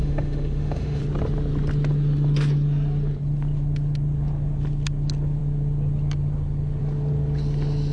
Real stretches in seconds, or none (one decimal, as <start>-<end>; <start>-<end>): 1.0-7.9